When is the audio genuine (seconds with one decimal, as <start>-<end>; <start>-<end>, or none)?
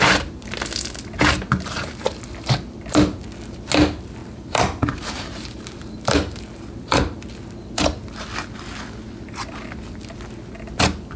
0.0-4.2; 7.3-11.2